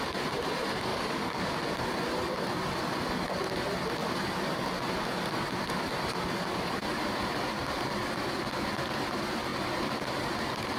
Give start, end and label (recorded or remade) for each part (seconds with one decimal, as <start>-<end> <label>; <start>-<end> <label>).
0.0-0.9 recorded; 0.9-1.5 remade; 1.5-10.8 recorded